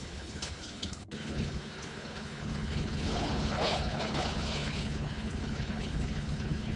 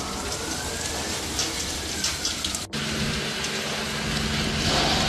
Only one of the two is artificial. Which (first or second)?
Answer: first